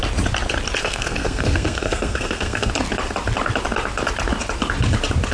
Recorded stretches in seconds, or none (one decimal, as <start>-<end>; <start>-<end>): 0.0-0.8; 2.7-5.3